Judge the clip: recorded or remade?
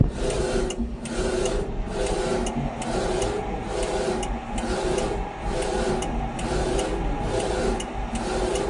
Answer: recorded